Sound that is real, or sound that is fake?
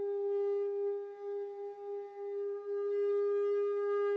real